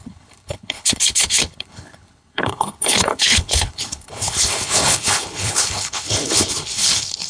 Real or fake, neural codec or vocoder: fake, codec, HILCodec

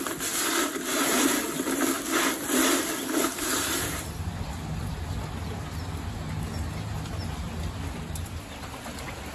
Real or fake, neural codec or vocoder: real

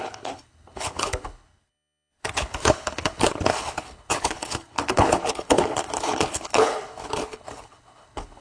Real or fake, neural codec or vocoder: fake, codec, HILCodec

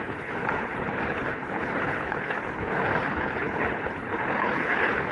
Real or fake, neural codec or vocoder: fake, codec, HILCodec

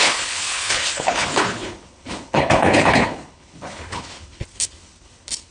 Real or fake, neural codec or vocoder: fake, codec, HILCodec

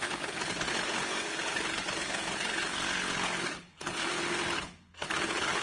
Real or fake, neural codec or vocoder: fake, codec, HILCodec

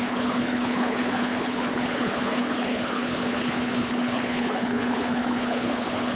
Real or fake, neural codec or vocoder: fake, codec, HILCodec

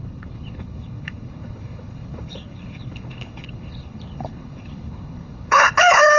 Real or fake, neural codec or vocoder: fake, codec, HILCodec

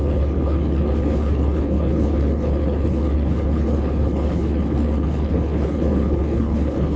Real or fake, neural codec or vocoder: fake, codec, HILCodec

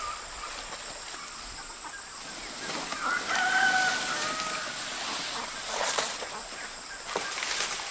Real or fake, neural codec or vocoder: real